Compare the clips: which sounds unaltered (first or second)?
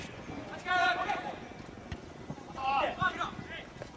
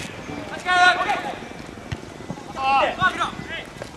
second